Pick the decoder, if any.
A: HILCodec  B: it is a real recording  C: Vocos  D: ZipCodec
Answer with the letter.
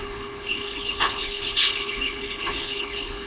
A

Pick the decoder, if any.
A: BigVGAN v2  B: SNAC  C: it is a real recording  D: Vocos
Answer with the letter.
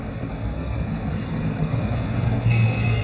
B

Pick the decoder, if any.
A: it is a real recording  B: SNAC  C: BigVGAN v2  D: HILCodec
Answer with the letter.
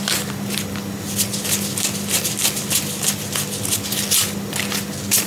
A